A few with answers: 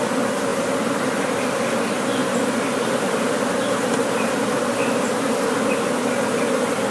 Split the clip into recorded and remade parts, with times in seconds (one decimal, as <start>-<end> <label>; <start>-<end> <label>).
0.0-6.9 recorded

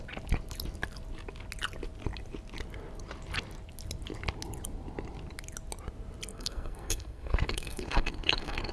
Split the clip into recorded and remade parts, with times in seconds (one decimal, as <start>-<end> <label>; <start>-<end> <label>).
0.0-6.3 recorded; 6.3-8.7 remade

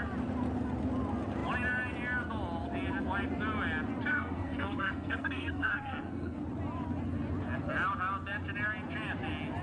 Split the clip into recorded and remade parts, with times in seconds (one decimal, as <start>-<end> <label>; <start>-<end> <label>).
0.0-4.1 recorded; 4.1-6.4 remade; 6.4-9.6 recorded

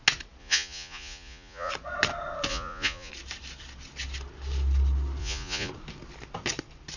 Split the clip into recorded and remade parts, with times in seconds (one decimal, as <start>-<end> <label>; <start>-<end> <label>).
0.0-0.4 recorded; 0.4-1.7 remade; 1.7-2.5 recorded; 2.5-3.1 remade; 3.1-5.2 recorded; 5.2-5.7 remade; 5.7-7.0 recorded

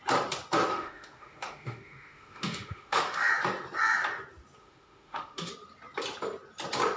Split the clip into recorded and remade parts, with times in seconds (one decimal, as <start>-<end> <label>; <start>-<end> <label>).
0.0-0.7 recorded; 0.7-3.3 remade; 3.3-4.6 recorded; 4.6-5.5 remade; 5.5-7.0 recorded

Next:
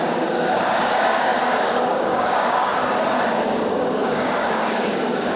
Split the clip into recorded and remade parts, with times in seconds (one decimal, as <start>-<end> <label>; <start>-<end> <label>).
0.0-2.7 remade; 2.7-3.3 recorded; 3.3-5.4 remade

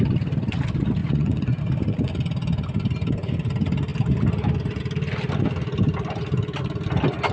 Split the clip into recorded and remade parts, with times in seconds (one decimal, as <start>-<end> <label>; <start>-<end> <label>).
0.0-1.0 recorded; 1.0-1.6 remade; 1.6-7.3 recorded